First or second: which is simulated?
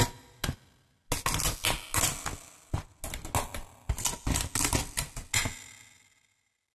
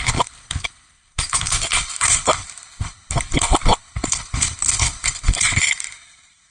second